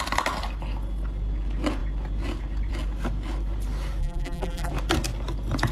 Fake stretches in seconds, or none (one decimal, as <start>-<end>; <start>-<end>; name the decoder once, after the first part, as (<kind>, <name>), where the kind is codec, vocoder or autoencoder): 4.0-4.7 (vocoder, BigVGAN v2)